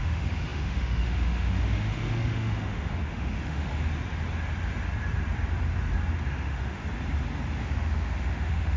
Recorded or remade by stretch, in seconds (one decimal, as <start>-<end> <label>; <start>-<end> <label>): 0.0-3.7 remade; 3.7-6.3 recorded; 6.3-6.8 remade; 6.8-7.6 recorded; 7.6-8.8 remade